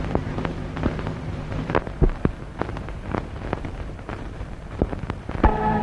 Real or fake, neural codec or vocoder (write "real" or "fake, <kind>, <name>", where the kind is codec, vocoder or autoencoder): fake, vocoder, BigVGAN v2